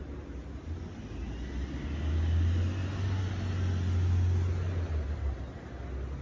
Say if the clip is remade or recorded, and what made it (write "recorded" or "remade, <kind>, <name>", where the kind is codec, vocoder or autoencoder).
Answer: recorded